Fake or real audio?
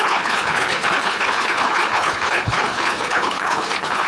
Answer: fake